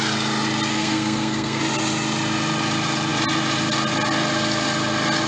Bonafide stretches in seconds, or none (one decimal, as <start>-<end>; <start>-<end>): 0.0-0.7; 1.6-5.3